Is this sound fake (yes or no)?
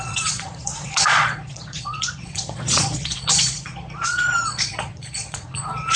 yes